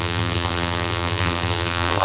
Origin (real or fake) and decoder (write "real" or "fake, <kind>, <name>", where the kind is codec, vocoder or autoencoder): fake, vocoder, BigVGAN v2